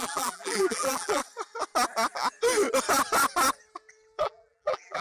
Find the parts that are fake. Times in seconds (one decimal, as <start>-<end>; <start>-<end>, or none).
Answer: 0.0-1.2; 4.2-5.0